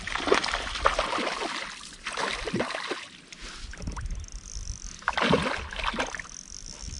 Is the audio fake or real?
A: real